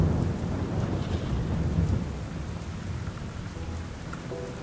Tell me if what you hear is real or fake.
real